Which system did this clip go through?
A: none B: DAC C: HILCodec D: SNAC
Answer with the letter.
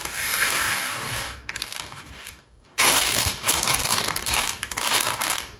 B